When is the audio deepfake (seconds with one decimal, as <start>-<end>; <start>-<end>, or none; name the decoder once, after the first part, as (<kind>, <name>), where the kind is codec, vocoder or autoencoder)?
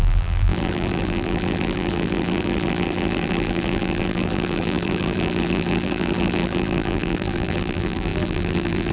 0.0-8.9 (vocoder, BigVGAN v2)